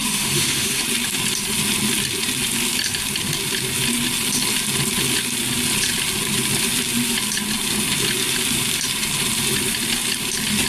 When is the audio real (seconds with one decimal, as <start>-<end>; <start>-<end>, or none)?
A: 0.8-10.7